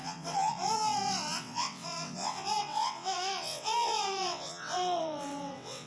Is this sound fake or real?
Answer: fake